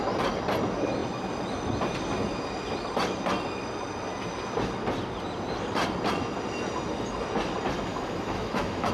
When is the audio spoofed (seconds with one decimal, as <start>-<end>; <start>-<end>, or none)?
7.9-8.9